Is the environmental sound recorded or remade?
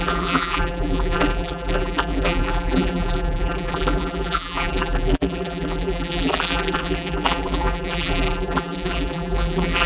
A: remade